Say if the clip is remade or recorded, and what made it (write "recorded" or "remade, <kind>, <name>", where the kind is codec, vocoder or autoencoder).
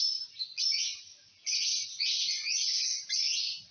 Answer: recorded